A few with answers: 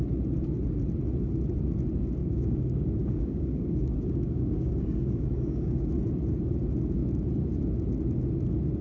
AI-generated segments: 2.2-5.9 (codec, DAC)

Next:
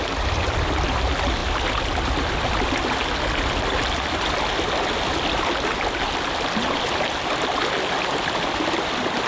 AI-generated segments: none

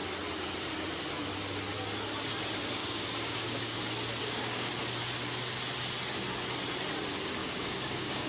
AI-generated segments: 2.8-3.8 (codec, DAC); 4.2-4.7; 7.4-8.3

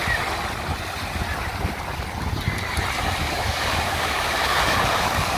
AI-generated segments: 3.2-5.4 (codec, DAC)